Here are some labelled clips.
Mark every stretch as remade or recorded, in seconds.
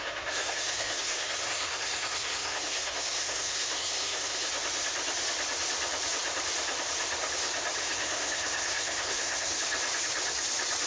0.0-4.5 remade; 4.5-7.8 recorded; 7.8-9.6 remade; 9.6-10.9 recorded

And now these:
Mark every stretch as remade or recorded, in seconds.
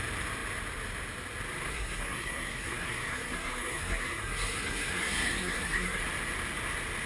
0.0-1.7 recorded; 1.7-6.0 remade; 6.0-7.1 recorded